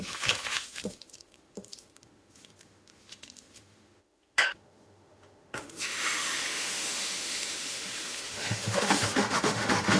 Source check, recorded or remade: remade